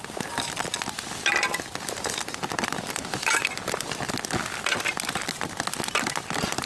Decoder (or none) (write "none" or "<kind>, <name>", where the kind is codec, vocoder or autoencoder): none